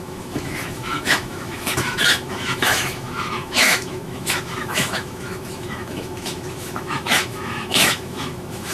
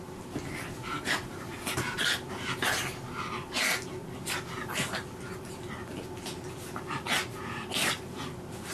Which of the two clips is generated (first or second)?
first